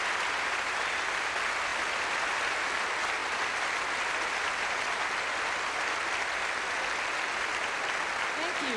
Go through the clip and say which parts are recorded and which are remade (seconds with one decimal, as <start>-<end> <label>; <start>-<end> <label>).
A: 0.0-8.8 recorded